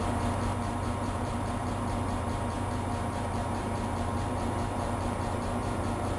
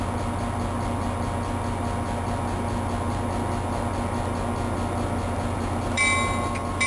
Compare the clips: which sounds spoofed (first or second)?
first